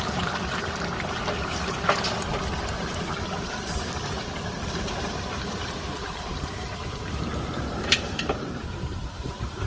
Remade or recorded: remade